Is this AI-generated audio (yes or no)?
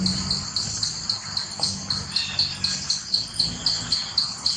no